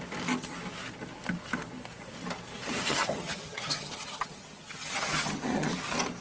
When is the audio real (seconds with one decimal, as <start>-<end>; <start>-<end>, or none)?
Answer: 0.0-2.9; 5.7-6.2